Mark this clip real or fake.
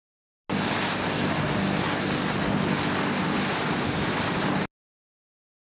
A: real